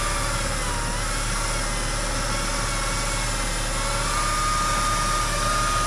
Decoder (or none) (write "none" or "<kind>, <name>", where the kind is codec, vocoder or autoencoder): none